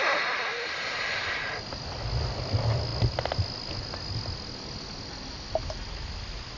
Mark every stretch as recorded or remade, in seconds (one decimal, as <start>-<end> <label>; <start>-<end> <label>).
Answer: 0.0-6.6 recorded